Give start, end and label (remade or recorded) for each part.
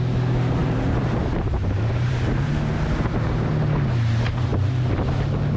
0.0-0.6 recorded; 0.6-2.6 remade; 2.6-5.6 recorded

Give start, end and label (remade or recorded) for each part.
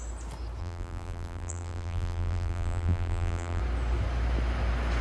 0.0-0.6 recorded; 0.6-3.6 remade; 3.6-5.0 recorded